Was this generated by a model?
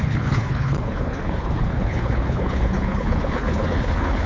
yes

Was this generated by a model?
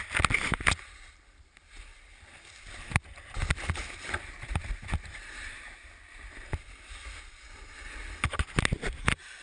no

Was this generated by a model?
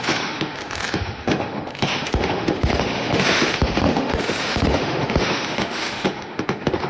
yes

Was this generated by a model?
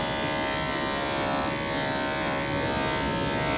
no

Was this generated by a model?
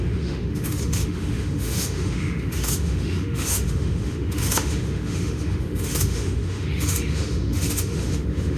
yes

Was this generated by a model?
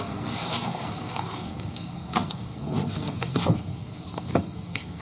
yes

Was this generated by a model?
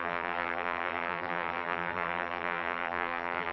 yes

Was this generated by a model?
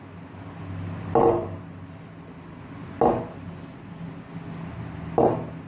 no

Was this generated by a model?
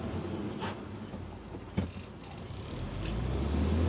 no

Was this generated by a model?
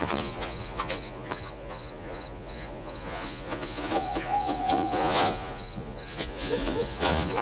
yes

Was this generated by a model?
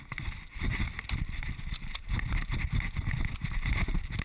no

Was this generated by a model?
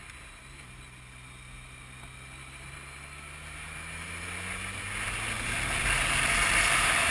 no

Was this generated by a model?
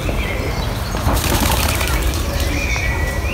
no